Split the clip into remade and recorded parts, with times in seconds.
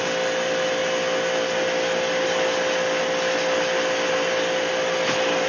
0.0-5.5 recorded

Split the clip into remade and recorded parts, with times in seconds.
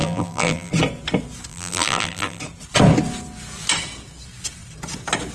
0.0-0.7 remade; 0.7-1.5 recorded; 1.5-2.4 remade; 2.4-5.3 recorded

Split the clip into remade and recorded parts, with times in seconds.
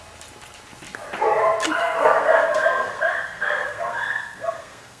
0.0-1.8 recorded; 1.8-5.0 remade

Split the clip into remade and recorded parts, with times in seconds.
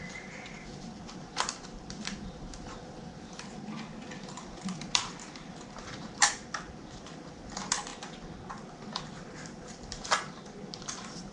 0.0-7.9 remade; 7.9-9.0 recorded; 9.0-11.3 remade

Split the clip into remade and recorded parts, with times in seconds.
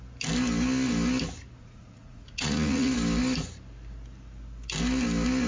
0.0-1.6 recorded; 1.6-2.9 remade; 2.9-5.5 recorded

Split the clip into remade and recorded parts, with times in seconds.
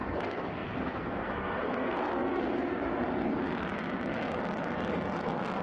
0.0-3.0 remade; 3.0-5.6 recorded